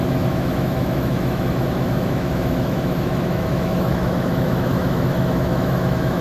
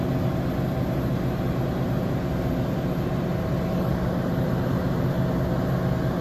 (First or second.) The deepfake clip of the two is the first